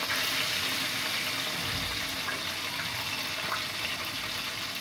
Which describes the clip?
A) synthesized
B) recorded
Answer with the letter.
B